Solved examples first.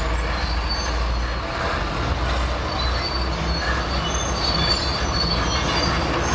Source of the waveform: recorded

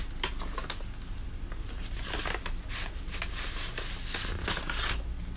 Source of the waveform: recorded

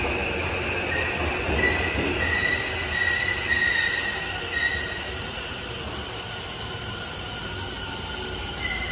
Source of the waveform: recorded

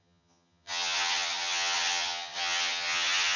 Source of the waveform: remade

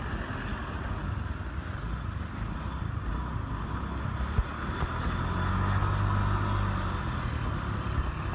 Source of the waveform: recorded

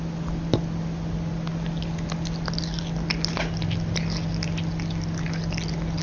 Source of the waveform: recorded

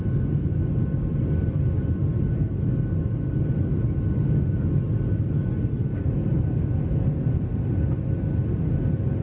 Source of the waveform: recorded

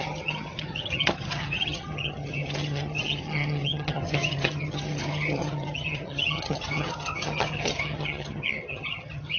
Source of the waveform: remade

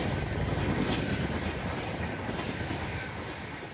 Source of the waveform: recorded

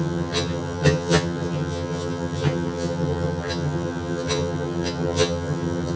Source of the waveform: remade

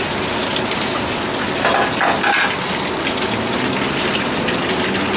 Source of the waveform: recorded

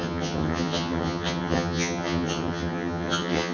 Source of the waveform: remade